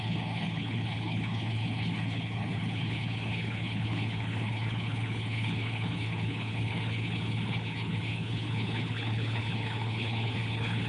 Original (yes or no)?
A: no